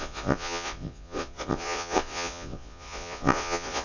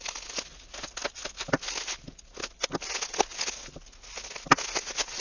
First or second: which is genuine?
second